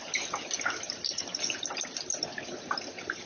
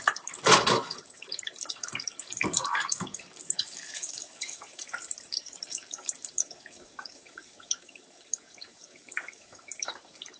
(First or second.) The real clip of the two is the first